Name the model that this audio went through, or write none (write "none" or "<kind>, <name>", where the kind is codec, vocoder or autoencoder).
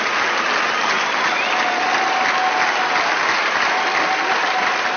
none